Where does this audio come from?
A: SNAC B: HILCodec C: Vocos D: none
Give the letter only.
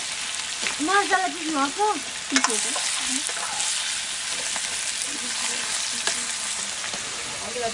D